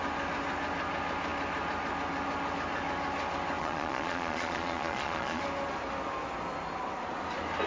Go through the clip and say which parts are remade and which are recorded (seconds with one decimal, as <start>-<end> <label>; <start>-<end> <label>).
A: 0.0-3.6 recorded; 3.6-5.4 remade; 5.4-7.7 recorded